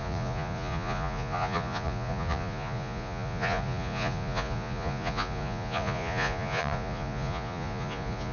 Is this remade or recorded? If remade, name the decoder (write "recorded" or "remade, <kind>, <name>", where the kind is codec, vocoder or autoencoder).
remade, vocoder, Vocos